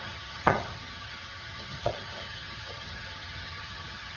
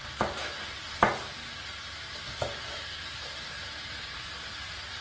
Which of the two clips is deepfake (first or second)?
first